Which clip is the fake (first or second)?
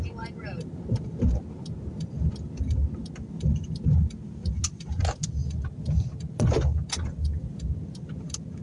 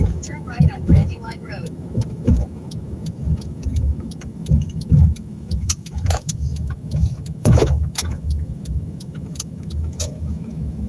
second